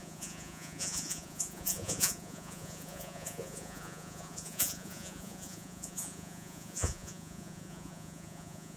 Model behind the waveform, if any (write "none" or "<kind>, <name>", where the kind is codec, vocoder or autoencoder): vocoder, Vocos